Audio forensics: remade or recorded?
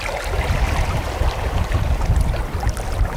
recorded